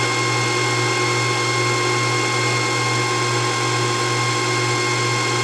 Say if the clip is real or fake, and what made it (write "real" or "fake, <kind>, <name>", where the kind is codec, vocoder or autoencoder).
real